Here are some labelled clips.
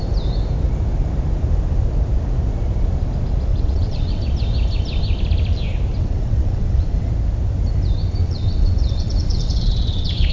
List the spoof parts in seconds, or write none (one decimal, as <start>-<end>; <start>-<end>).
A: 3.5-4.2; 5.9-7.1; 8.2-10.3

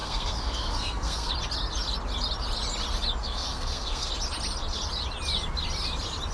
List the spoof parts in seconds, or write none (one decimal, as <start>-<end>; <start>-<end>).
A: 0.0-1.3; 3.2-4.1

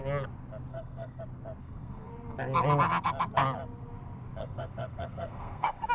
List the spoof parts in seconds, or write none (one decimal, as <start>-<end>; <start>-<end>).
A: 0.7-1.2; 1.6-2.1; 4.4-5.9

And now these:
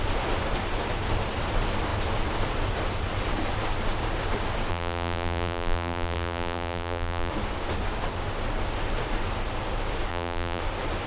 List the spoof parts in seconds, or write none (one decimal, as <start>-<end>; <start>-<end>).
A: 4.7-7.3; 10.1-10.6

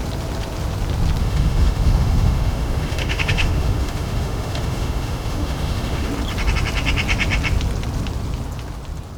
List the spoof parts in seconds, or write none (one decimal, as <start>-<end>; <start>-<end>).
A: 1.2-6.1

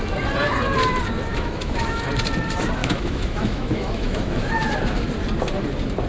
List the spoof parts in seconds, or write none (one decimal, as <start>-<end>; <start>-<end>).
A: 1.3-2.1; 2.8-4.5